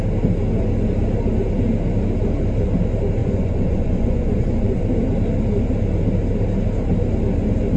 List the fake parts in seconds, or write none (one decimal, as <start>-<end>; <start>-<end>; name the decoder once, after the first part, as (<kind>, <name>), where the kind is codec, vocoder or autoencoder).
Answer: 3.2-4.8 (vocoder, Vocos)